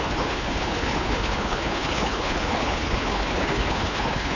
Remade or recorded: remade